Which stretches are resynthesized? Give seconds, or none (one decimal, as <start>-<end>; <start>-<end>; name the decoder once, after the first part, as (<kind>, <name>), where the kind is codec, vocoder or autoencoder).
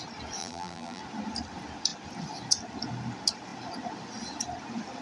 0.4-1.0 (vocoder, BigVGAN v2)